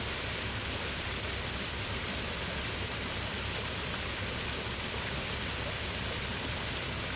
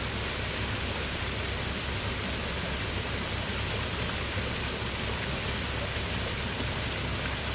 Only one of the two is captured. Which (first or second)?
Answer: second